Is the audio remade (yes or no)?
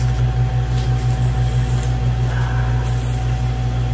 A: no